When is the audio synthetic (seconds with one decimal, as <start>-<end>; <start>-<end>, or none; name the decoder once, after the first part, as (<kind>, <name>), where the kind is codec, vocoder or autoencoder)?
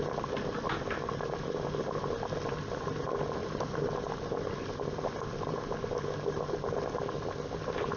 none